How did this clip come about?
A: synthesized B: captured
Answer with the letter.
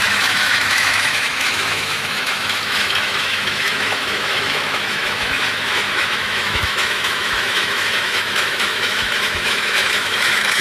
A